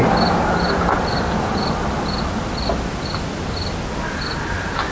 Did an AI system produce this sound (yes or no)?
no